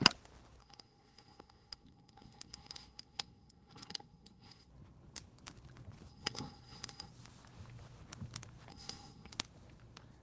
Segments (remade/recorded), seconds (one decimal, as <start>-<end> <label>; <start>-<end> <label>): 0.0-0.6 recorded; 0.6-4.7 remade; 4.7-6.1 recorded; 6.1-7.1 remade; 7.1-8.7 recorded; 8.7-9.3 remade; 9.3-10.2 recorded